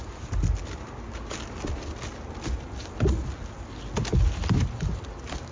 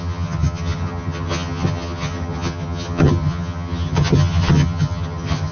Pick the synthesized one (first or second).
second